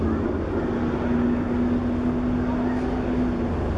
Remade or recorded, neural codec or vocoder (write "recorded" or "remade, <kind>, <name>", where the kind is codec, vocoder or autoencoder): recorded